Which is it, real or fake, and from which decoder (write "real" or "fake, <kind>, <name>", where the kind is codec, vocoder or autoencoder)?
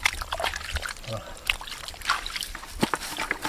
real